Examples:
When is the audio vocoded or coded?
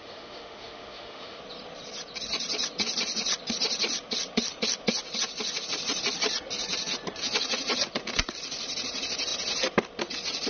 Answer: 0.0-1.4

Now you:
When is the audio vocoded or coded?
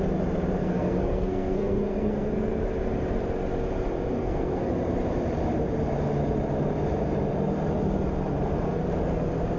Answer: 0.6-2.3; 4.2-4.7